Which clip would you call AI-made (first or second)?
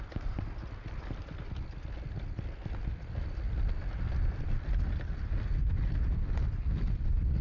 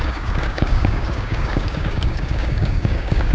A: second